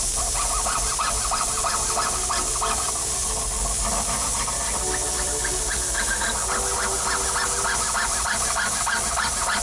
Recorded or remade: recorded